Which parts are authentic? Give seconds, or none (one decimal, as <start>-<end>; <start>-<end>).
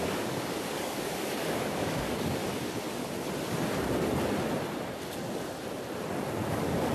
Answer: 2.4-6.5